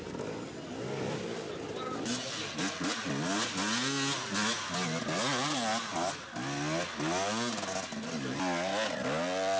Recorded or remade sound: recorded